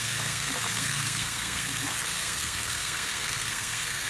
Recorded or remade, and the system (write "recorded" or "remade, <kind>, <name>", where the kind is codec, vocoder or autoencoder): remade, codec, SNAC